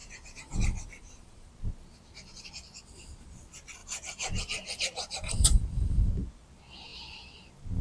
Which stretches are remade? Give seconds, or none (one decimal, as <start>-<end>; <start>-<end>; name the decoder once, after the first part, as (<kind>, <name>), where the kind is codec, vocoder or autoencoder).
0.0-1.5 (vocoder, BigVGAN v2); 3.8-5.6